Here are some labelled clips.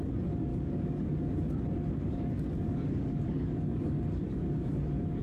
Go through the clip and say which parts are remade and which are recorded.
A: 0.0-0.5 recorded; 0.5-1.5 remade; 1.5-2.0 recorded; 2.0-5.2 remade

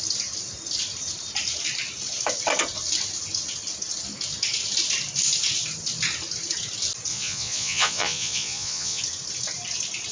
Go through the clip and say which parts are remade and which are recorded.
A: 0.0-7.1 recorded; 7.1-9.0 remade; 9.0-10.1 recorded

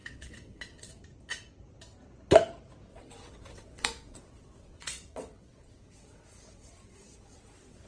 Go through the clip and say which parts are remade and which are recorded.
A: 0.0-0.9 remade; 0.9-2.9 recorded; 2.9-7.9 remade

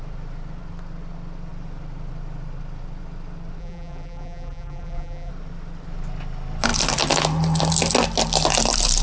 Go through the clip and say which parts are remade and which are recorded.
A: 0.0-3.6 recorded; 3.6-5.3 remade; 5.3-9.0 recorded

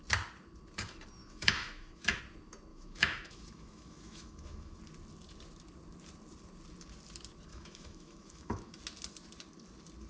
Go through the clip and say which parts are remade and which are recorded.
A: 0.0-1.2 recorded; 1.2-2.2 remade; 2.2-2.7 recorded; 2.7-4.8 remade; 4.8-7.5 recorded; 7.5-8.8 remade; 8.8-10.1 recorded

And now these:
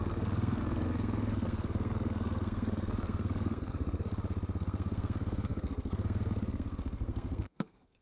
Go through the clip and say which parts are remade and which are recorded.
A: 0.0-4.1 remade; 4.1-4.6 recorded; 4.6-8.0 remade